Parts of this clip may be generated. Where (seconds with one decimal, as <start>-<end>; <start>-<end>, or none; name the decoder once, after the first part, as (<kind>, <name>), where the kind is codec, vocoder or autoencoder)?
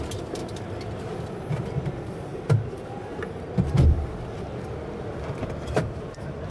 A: 0.0-0.4 (vocoder, BigVGAN v2); 1.5-2.3; 5.7-6.5